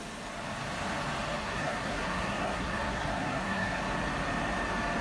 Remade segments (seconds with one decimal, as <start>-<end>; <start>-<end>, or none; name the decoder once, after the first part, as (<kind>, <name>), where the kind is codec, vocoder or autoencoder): 1.4-3.8 (codec, SNAC)